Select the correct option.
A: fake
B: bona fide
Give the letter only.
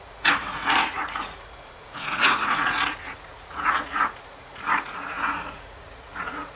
A